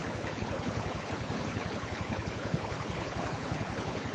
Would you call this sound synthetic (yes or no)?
yes